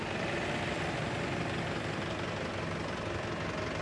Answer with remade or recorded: recorded